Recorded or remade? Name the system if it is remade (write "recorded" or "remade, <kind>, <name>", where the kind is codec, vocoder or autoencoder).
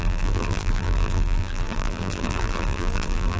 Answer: remade, vocoder, BigVGAN v2